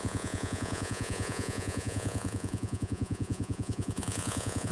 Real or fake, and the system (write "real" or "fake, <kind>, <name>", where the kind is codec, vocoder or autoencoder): fake, vocoder, Vocos